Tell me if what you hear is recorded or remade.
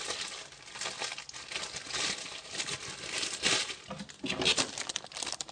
recorded